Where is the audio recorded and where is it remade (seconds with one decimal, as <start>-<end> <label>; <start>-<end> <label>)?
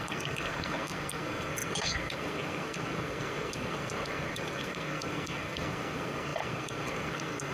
0.0-7.5 remade